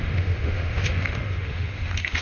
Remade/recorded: remade